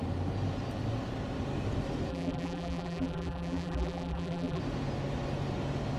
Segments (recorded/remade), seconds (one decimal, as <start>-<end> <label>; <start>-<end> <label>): 0.0-2.1 recorded; 2.1-4.6 remade; 4.6-6.0 recorded